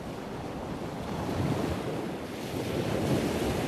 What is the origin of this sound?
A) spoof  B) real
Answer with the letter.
B